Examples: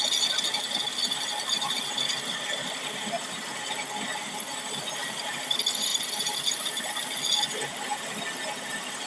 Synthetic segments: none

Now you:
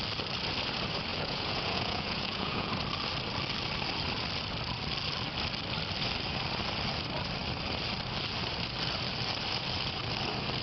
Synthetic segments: 1.1-2.7 (vocoder, Vocos)

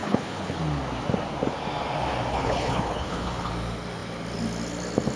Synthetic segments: 0.0-0.6 (codec, HILCodec); 2.3-3.5

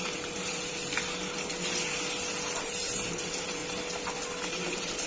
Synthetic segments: 0.0-0.8 (vocoder, BigVGAN v2); 2.6-3.6; 4.5-5.1

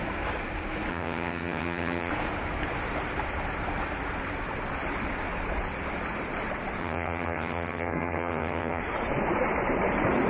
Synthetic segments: 0.9-2.1 (vocoder, HiFi-GAN); 6.8-8.8

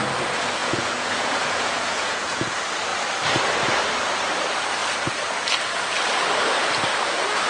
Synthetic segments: 0.6-2.5 (vocoder, Vocos)

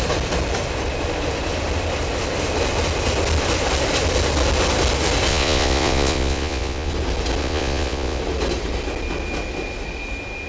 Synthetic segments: 5.3-6.9 (vocoder, Vocos); 7.4-8.2

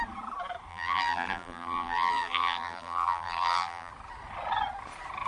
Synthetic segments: 0.7-3.9 (vocoder, BigVGAN v2)